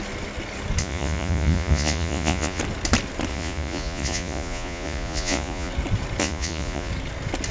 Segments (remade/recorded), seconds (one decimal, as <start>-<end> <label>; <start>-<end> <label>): 0.0-0.8 recorded; 0.8-2.6 remade; 2.6-3.3 recorded; 3.3-5.7 remade; 5.7-6.2 recorded; 6.2-6.9 remade; 6.9-7.5 recorded